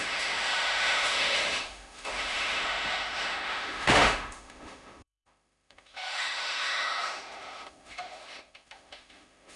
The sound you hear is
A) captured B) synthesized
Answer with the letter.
B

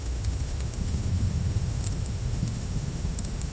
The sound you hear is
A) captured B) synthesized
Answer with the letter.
B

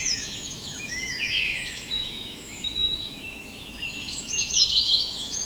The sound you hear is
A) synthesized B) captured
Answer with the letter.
A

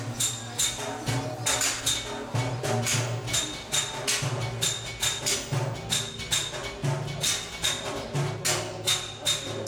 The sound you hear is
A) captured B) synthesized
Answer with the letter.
A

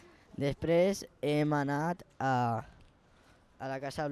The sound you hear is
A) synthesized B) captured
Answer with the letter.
B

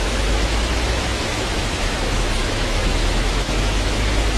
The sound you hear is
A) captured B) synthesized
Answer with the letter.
B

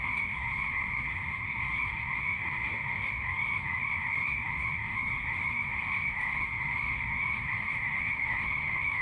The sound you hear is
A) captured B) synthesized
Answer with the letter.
B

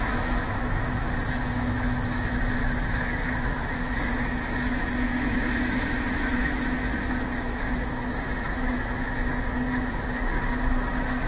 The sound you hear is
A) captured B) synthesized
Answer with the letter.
B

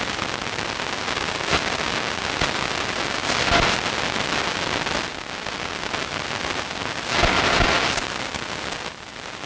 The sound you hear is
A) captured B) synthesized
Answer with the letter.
A